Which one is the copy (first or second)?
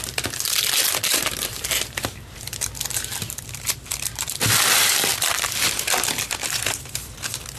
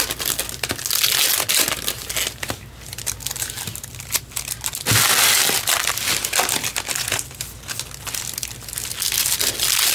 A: first